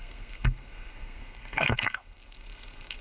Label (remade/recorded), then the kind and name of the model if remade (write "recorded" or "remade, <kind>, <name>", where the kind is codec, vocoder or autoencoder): remade, codec, SNAC